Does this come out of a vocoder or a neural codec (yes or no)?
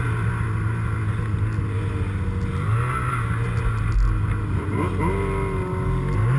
no